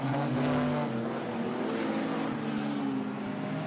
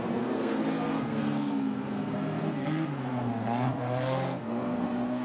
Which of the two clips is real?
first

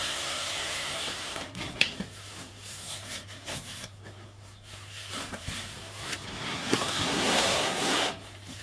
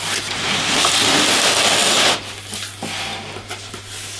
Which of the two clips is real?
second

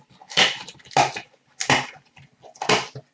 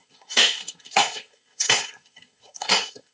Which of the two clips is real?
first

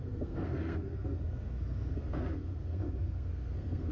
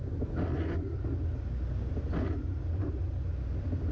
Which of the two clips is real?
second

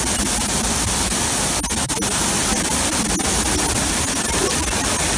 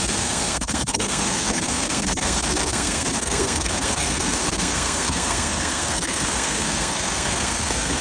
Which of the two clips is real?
first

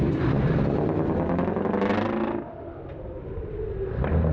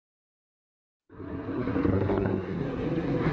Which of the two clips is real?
first